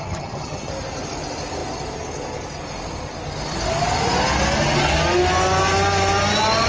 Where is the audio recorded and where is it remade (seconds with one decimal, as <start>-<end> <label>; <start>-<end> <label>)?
0.0-0.7 remade; 0.7-6.7 recorded